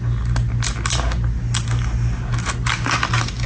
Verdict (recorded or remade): recorded